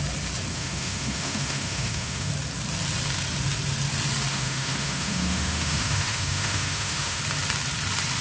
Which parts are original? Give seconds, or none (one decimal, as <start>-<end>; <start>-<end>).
0.0-0.5; 2.3-4.3; 7.2-8.2